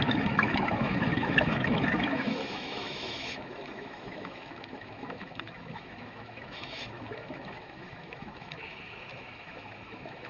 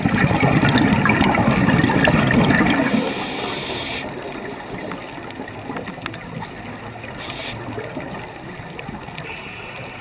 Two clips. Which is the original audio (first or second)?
second